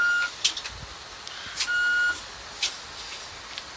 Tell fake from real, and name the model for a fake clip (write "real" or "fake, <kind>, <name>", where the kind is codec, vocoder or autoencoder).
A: real